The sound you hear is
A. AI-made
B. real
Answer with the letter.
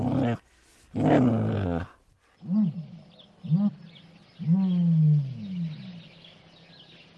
B